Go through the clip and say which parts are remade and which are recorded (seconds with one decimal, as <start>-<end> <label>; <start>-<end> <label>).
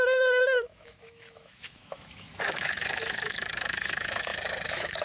0.0-5.0 remade